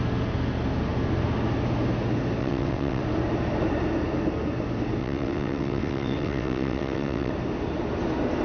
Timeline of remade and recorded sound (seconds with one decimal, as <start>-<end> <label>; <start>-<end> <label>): 0.0-2.4 recorded; 2.4-3.0 remade; 3.0-5.0 recorded; 5.0-7.3 remade; 7.3-8.4 recorded